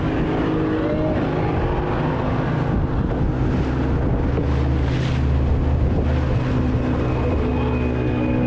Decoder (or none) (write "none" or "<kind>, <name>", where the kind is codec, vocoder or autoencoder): none